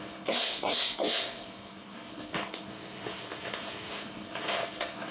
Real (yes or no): no